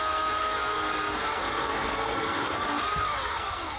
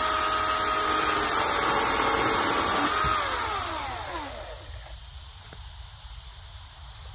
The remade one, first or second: first